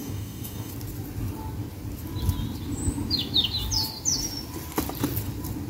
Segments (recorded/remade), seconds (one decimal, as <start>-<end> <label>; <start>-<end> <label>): 0.0-0.7 remade; 0.7-5.7 recorded